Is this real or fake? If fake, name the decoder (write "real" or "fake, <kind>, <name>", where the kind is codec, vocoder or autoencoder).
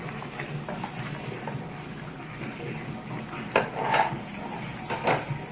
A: real